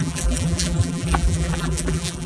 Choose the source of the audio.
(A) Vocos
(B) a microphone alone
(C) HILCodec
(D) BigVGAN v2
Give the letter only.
D